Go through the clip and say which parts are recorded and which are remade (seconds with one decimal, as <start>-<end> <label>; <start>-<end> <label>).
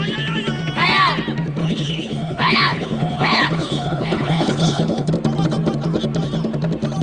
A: 0.0-1.6 recorded; 1.6-5.1 remade; 5.1-7.0 recorded